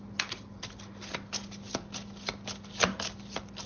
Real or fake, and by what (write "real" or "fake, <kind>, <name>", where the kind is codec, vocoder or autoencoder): real